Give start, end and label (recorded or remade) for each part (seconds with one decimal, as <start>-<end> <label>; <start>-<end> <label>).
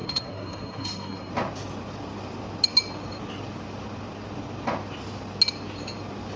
0.0-1.3 remade; 1.3-6.4 recorded